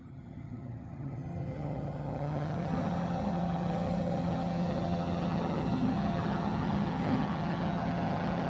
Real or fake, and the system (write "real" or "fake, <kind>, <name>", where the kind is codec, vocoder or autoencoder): fake, vocoder, HiFi-GAN